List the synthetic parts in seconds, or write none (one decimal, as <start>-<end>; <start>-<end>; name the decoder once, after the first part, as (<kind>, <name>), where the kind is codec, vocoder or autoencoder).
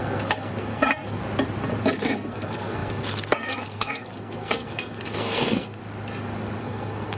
0.0-1.2 (codec, SNAC); 1.9-5.8; 6.6-7.2